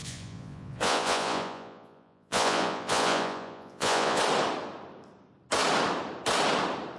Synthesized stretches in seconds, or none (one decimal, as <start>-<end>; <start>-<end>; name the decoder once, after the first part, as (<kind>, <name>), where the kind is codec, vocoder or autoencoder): 0.0-4.2 (vocoder, Vocos)